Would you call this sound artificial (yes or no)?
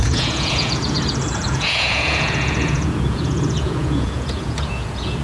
yes